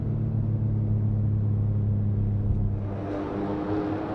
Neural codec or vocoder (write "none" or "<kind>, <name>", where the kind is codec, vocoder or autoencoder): none